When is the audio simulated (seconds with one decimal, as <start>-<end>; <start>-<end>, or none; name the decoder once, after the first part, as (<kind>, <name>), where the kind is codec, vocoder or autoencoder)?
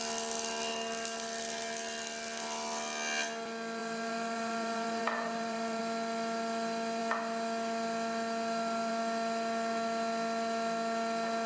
3.8-5.8 (vocoder, BigVGAN v2)